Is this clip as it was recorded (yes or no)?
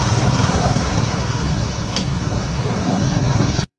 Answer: no